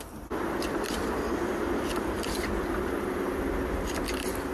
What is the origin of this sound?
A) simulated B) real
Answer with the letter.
B